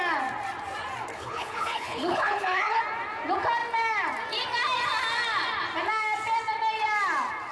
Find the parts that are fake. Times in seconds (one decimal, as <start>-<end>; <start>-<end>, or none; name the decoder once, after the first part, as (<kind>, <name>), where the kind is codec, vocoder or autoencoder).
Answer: 1.1-2.8 (codec, HILCodec)